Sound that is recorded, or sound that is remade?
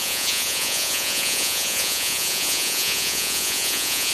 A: remade